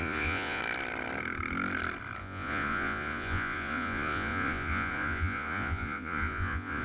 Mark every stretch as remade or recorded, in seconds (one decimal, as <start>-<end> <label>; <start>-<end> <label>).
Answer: 0.0-0.6 remade; 0.6-2.2 recorded; 2.2-6.8 remade